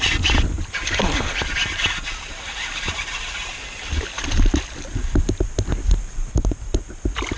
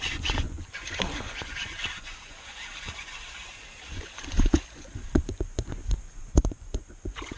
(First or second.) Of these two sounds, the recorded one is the first